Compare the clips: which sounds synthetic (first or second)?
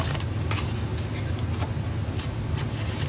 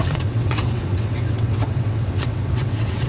second